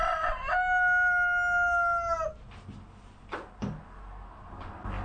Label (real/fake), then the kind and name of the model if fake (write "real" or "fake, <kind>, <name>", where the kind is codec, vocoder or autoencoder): real